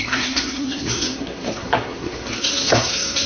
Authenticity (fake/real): fake